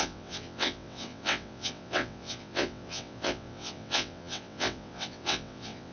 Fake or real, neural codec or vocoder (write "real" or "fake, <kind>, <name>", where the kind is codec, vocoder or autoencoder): fake, vocoder, WaveNeXt